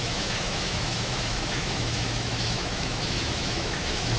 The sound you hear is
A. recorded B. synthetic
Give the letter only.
B